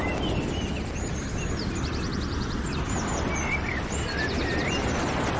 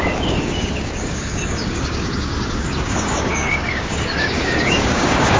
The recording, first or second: first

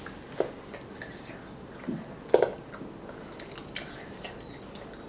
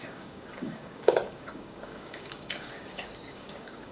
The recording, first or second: first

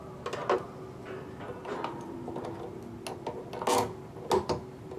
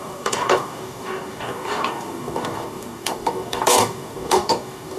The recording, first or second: first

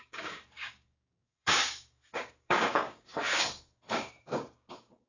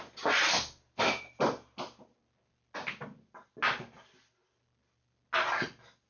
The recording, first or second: second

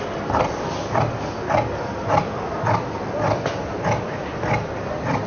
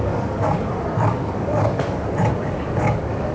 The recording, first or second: first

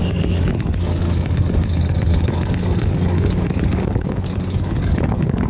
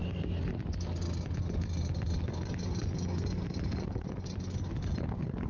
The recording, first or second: second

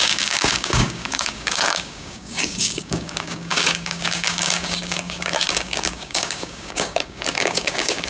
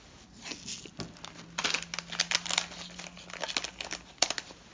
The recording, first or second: second